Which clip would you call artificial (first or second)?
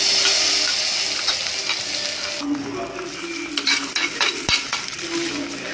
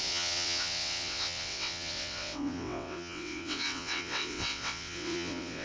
second